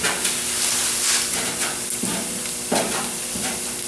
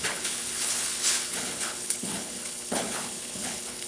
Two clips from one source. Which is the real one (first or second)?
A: first